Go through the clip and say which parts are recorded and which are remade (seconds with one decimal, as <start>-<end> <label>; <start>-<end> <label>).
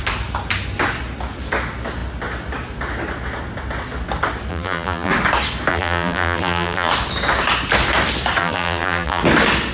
0.0-4.5 recorded; 4.5-5.1 remade; 5.1-5.7 recorded; 5.7-6.9 remade; 6.9-8.4 recorded; 8.4-9.2 remade; 9.2-9.7 recorded